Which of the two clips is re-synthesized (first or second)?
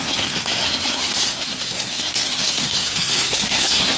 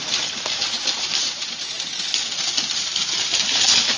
first